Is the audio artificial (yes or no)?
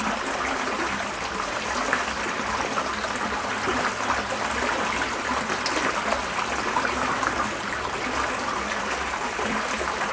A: no